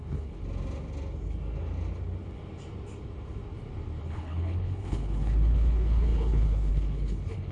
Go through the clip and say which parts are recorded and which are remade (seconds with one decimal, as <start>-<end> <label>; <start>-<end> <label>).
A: 0.0-0.4 remade; 0.4-4.0 recorded; 4.0-7.5 remade

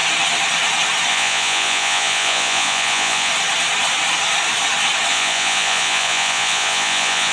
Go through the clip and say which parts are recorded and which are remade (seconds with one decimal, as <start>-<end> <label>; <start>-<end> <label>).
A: 0.0-1.1 recorded; 1.1-3.3 remade; 3.3-5.1 recorded; 5.1-7.3 remade

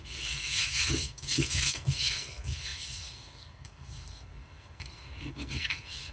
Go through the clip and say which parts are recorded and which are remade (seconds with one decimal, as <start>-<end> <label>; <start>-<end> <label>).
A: 0.0-6.1 remade

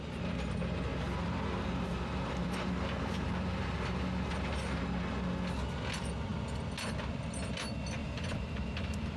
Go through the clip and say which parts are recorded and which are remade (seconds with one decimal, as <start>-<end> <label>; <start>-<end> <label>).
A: 0.0-0.9 recorded; 0.9-4.8 remade; 4.8-8.0 recorded; 8.0-9.2 remade

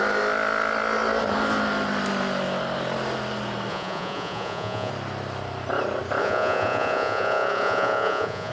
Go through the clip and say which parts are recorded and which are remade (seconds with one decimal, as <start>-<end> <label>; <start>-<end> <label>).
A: 0.0-3.7 recorded; 3.7-4.9 remade; 4.9-6.2 recorded; 6.2-8.5 remade

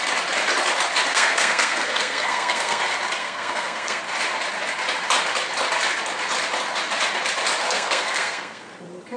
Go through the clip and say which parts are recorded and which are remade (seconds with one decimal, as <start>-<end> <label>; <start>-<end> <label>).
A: 0.0-1.1 recorded; 1.1-2.8 remade; 2.8-3.2 recorded; 3.2-4.0 remade; 4.0-7.6 recorded; 7.6-8.7 remade; 8.7-9.2 recorded